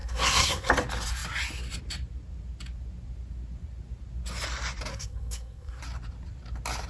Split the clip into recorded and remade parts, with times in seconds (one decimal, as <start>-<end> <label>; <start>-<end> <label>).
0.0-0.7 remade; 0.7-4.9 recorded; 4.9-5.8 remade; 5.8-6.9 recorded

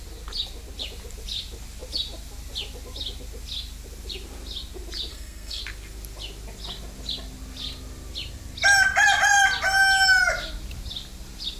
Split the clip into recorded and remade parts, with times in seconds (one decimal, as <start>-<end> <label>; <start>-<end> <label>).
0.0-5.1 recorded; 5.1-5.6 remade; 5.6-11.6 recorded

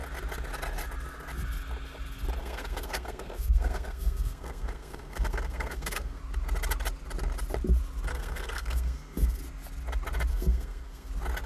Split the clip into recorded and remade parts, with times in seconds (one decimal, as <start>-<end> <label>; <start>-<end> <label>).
0.0-2.4 recorded; 2.4-6.2 remade; 6.2-8.1 recorded; 8.1-9.4 remade; 9.4-10.3 recorded; 10.3-11.1 remade; 11.1-11.5 recorded

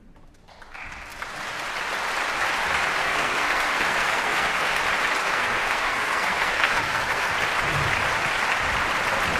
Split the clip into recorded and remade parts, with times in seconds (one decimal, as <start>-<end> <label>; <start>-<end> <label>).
0.0-3.0 recorded; 3.0-4.8 remade; 4.8-5.2 recorded; 5.2-7.3 remade; 7.3-9.4 recorded